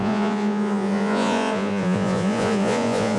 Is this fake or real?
fake